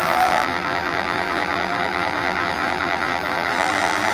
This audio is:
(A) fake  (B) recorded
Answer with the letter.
A